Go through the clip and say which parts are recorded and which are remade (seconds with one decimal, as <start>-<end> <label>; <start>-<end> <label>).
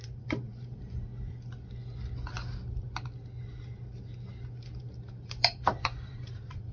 0.0-0.8 remade; 0.8-4.8 recorded; 4.8-6.7 remade